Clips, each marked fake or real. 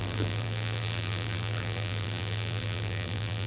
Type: fake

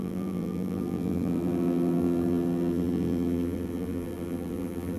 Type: fake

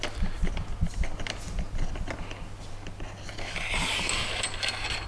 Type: real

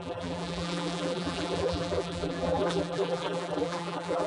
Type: fake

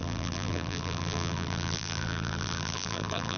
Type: fake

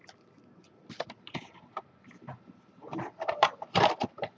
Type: real